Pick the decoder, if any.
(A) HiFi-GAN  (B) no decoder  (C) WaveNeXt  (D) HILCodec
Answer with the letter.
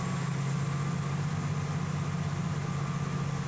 B